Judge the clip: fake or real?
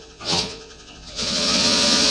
fake